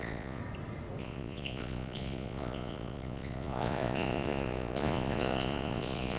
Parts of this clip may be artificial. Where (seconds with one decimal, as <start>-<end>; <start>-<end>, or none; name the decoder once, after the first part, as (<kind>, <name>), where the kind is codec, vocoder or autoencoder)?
0.0-0.4 (vocoder, Vocos); 1.0-6.2